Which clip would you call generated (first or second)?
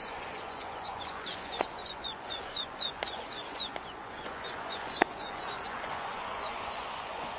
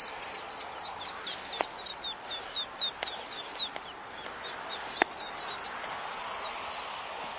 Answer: first